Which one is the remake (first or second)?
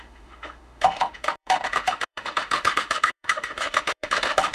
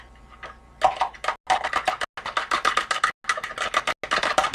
first